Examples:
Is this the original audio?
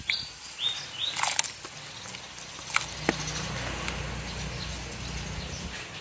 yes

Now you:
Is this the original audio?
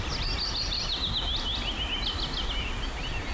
yes